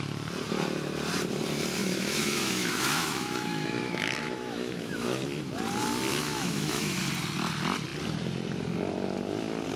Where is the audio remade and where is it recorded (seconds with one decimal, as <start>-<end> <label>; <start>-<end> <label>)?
0.0-1.8 recorded; 1.8-5.5 remade; 5.5-6.1 recorded; 6.1-7.0 remade; 7.0-9.8 recorded